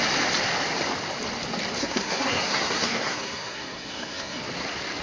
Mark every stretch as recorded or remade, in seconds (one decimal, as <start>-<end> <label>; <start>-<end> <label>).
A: 0.0-1.8 recorded; 1.8-4.4 remade; 4.4-5.0 recorded